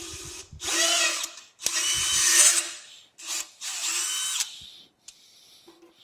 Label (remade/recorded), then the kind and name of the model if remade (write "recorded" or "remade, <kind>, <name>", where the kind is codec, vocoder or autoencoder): recorded